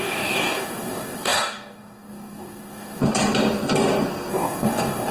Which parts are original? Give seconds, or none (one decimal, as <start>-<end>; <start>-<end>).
3.0-4.3